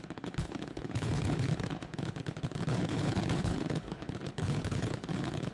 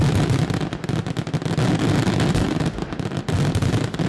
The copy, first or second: first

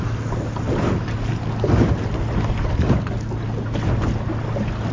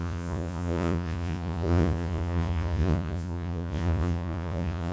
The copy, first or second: second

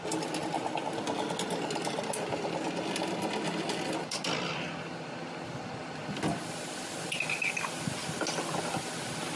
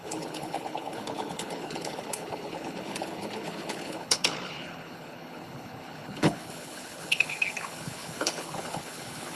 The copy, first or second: second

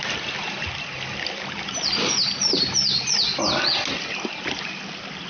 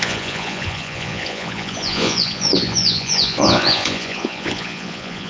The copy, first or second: second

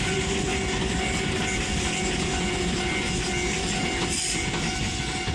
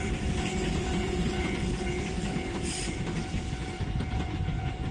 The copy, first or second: second